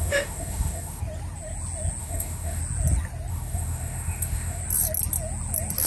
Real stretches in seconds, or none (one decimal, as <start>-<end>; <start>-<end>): 1.0-2.0; 2.6-3.3; 4.6-5.9